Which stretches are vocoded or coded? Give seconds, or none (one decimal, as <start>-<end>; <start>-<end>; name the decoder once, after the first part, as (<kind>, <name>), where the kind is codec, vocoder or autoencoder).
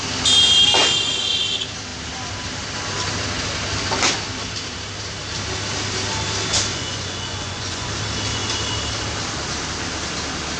6.7-7.9 (vocoder, Vocos)